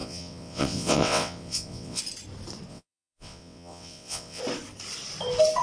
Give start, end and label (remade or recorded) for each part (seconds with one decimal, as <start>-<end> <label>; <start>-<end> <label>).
0.0-2.0 remade; 2.0-2.7 recorded; 2.7-4.4 remade; 4.4-5.6 recorded